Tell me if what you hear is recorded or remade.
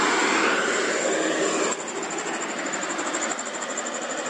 recorded